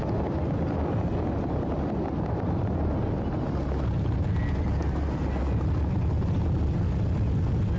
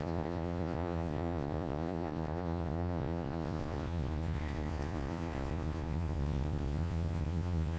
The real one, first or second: first